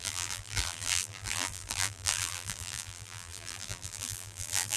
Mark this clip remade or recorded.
remade